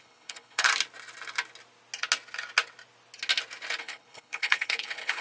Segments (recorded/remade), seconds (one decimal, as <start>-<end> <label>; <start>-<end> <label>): 0.0-0.7 remade; 0.7-3.8 recorded; 3.8-5.2 remade